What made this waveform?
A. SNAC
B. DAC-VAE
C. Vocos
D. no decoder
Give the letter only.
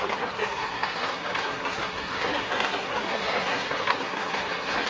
A